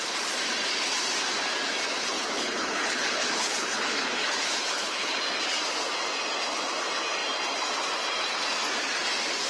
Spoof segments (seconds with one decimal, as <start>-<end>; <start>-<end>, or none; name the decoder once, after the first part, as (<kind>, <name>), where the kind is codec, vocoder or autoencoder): 2.0-5.2 (codec, HILCodec)